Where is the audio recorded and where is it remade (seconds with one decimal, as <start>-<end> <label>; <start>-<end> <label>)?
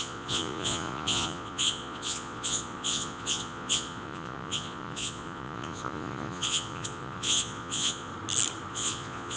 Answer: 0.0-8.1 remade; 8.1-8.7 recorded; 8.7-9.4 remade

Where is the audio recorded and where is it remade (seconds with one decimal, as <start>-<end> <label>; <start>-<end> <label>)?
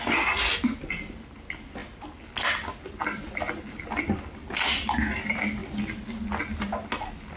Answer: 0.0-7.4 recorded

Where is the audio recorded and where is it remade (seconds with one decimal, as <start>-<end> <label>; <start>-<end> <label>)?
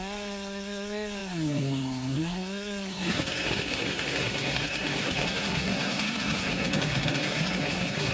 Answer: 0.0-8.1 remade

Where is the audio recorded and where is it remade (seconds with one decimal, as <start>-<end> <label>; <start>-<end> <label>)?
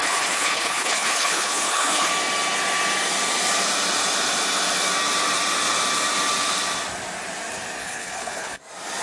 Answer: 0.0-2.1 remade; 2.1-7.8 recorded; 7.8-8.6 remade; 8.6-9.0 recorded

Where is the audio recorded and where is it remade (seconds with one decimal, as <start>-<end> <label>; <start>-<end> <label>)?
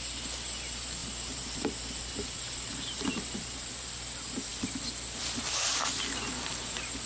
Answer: 0.0-1.0 recorded; 1.0-2.7 remade; 2.7-3.1 recorded; 3.1-3.7 remade; 3.7-4.5 recorded; 4.5-5.2 remade; 5.2-7.1 recorded